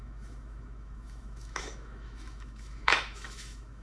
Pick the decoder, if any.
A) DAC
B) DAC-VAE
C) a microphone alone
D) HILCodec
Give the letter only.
B